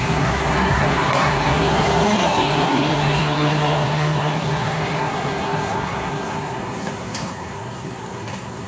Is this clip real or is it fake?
fake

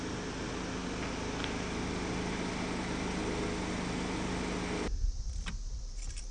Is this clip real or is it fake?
real